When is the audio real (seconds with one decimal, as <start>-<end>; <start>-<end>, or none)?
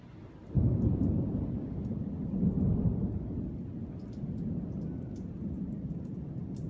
0.0-0.4; 1.4-6.7